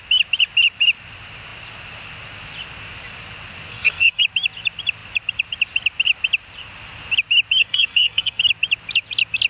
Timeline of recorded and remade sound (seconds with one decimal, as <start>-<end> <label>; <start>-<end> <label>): 0.0-3.7 recorded; 3.7-4.2 remade; 4.2-7.6 recorded; 7.6-8.4 remade; 8.4-9.5 recorded